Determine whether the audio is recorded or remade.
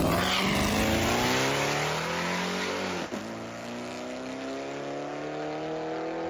recorded